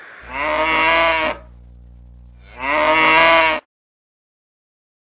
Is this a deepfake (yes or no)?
no